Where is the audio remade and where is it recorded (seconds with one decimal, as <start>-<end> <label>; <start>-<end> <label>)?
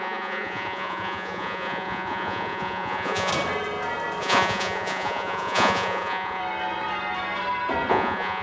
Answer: 0.0-3.3 remade; 3.3-4.2 recorded; 4.2-6.4 remade; 6.4-7.9 recorded; 7.9-8.4 remade